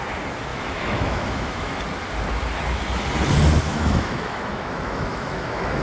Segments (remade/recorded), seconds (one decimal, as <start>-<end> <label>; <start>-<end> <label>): 0.0-0.5 recorded; 0.5-1.8 remade; 1.8-3.7 recorded; 3.7-5.8 remade